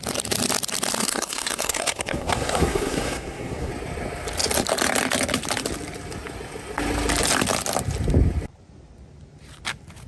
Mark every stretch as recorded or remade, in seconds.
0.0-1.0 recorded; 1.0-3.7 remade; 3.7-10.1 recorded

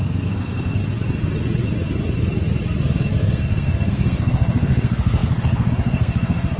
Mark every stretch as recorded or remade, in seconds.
0.0-0.8 remade; 0.8-3.2 recorded; 3.2-6.6 remade

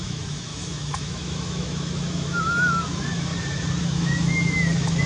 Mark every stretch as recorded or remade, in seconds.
0.0-3.3 remade; 3.3-3.8 recorded; 3.8-5.1 remade

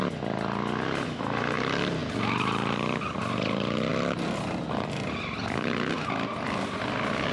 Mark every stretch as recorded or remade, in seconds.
0.0-7.3 recorded

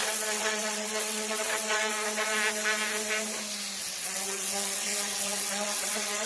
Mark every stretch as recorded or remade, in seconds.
0.0-1.9 remade; 1.9-3.8 recorded; 3.8-6.3 remade

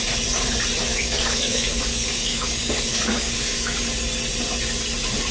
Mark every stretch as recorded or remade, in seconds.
0.0-0.9 recorded; 0.9-3.8 remade; 3.8-5.3 recorded

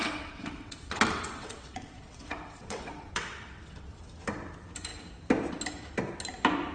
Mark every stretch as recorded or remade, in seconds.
0.0-4.0 remade; 4.0-6.7 recorded